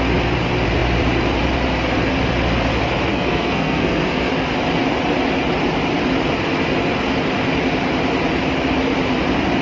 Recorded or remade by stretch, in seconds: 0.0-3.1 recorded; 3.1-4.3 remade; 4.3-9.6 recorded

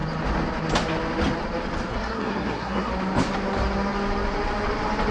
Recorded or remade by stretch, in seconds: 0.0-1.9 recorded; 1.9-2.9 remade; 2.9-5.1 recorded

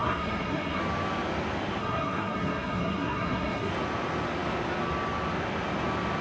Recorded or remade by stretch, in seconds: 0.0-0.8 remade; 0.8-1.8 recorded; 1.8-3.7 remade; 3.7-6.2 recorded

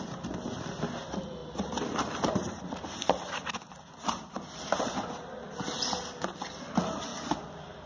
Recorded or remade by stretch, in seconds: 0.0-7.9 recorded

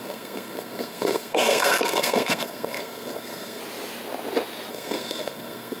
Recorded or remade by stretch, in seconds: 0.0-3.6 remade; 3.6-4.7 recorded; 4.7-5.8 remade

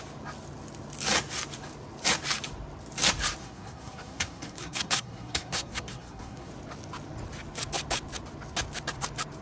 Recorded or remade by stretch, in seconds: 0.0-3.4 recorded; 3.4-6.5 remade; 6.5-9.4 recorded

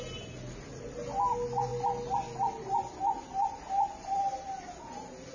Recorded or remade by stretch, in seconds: 0.0-5.3 recorded

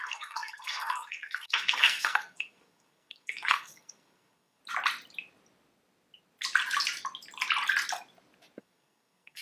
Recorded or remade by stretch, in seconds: 0.0-4.6 remade; 4.6-8.6 recorded; 8.6-9.4 remade